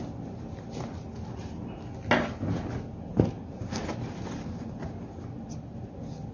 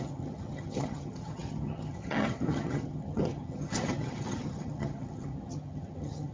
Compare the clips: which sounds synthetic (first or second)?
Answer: second